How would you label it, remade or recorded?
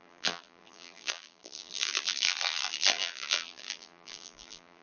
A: remade